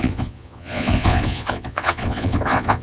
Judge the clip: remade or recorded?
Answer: remade